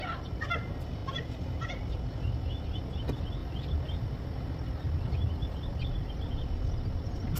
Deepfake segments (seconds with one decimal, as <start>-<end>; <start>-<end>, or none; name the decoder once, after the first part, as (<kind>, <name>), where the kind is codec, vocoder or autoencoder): 3.4-6.3 (vocoder, BigVGAN v2)